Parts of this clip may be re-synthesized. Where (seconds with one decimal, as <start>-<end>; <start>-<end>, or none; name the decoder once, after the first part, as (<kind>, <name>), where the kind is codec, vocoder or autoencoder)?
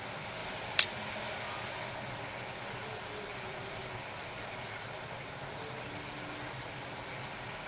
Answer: none